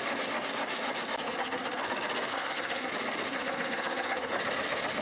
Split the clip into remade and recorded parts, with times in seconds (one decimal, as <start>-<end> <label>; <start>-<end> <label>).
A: 0.0-1.2 recorded; 1.2-1.8 remade; 1.8-2.3 recorded; 2.3-2.9 remade; 2.9-3.3 recorded; 3.3-4.3 remade; 4.3-5.0 recorded